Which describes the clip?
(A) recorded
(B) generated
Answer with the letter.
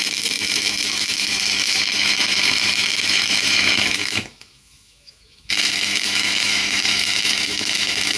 B